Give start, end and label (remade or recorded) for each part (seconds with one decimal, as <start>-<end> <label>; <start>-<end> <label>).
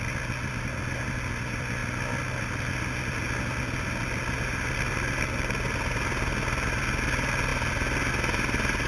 0.0-8.9 recorded